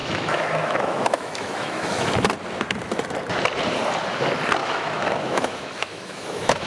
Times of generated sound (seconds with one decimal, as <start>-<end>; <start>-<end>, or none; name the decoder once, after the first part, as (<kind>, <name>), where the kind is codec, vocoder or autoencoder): 0.0-2.1 (autoencoder, DAC-VAE); 4.6-6.7

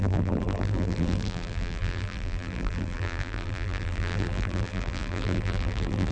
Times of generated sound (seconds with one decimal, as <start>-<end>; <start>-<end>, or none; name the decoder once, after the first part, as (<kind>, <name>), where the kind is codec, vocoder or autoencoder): 0.0-6.1 (vocoder, BigVGAN v2)

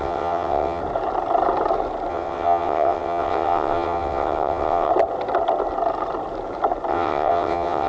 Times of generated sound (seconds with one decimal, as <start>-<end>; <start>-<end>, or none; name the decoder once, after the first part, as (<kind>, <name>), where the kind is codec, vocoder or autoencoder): 0.0-0.8 (vocoder, WaveNeXt); 2.1-4.9; 6.9-7.9

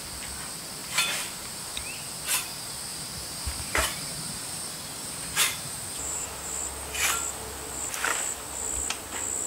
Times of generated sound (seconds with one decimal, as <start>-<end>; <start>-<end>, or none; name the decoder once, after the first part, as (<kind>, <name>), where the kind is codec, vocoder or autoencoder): 0.8-2.2 (vocoder, BigVGAN v2); 2.9-6.5

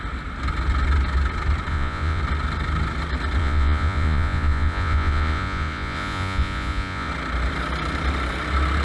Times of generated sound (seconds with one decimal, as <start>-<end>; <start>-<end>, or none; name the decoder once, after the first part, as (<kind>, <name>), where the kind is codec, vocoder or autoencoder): 1.7-2.2 (vocoder, Vocos); 3.4-7.1

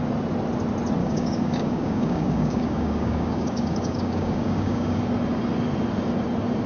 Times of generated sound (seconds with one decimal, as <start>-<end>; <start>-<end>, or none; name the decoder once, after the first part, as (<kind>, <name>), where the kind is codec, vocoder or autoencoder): 1.0-5.0 (codec, DAC)